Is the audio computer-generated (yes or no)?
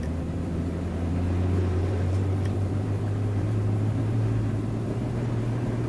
yes